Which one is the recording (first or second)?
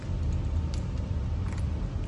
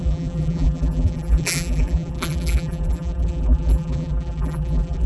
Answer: first